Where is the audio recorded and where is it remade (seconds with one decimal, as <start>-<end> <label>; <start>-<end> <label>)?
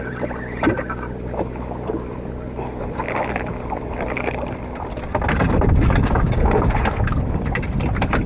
0.0-6.0 recorded; 6.0-6.7 remade; 6.7-8.3 recorded